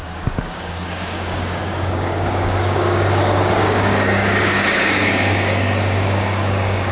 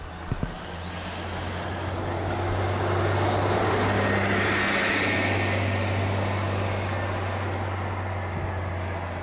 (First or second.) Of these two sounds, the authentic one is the second